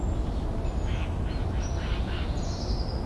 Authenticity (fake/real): real